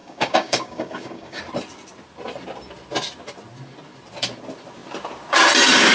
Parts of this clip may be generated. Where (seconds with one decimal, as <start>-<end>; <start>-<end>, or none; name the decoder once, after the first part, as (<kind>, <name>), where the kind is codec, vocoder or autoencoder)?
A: 0.0-1.4 (codec, DAC)